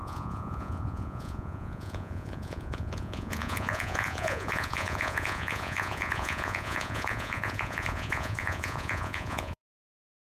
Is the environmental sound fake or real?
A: fake